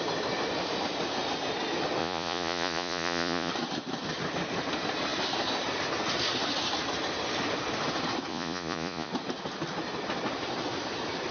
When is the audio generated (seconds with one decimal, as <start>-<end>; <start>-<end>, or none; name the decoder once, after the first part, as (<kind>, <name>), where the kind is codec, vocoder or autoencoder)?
2.0-3.5 (vocoder, Vocos); 8.3-9.1